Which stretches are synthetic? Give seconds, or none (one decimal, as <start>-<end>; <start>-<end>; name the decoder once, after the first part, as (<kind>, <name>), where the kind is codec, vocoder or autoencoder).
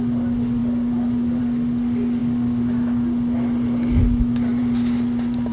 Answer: 0.6-1.4 (vocoder, BigVGAN v2); 2.2-4.0; 4.6-5.5